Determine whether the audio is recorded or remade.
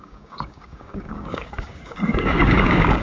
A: remade